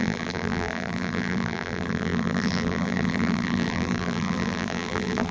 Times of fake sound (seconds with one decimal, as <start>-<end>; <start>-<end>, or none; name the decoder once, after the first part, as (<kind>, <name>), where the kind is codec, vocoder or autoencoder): 0.0-5.3 (vocoder, BigVGAN v2)